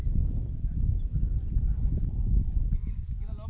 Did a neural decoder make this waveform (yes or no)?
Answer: no